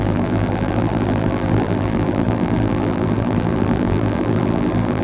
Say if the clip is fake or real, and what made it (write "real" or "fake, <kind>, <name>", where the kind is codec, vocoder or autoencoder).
fake, vocoder, BigVGAN v2